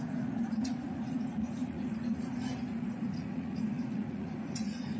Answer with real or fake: fake